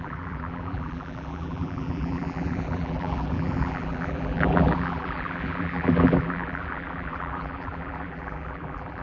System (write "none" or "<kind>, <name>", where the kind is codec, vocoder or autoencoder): vocoder, BigVGAN v2